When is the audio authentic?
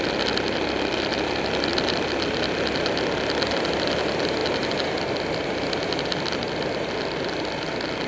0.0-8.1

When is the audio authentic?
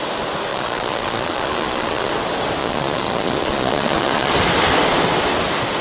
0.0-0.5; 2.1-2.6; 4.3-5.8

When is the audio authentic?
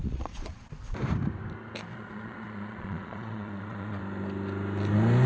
0.7-1.9; 4.0-5.3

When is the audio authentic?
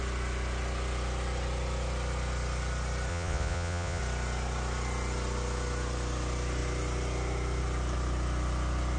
0.0-3.1; 4.0-9.0